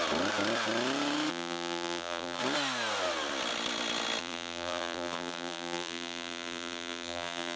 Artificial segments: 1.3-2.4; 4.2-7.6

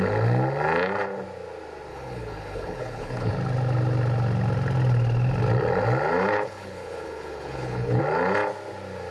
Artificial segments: 1.9-3.3; 6.3-8.0

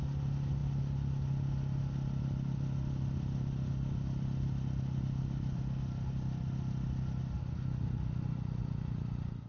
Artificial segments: none